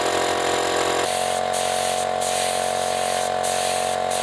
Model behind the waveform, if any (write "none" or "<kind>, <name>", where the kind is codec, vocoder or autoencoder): none